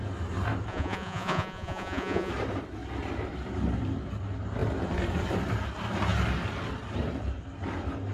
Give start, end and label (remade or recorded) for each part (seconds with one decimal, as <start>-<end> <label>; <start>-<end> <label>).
0.0-0.7 recorded; 0.7-2.3 remade; 2.3-8.1 recorded